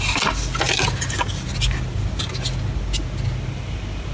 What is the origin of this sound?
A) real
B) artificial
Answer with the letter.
A